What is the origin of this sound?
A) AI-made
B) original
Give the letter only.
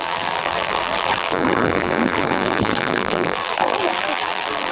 A